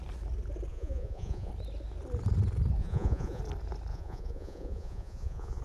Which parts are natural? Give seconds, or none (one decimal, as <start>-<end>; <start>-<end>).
0.0-0.7; 1.5-2.8; 3.4-3.9